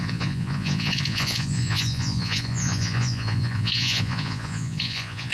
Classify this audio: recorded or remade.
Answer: remade